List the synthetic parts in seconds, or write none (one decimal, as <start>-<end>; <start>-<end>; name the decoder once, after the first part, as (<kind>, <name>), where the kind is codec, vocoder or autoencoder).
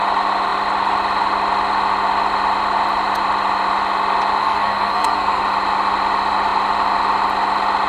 4.4-5.4 (codec, SNAC)